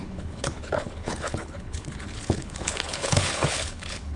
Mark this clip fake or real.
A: fake